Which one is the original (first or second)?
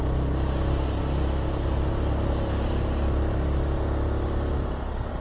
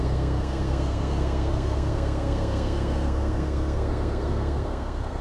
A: first